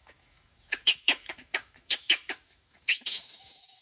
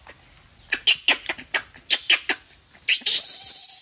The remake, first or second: first